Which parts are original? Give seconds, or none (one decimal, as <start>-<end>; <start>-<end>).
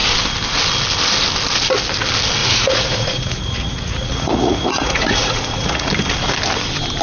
0.0-2.4; 5.9-7.0